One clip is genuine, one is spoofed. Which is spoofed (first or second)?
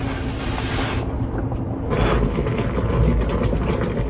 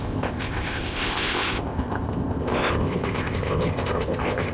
second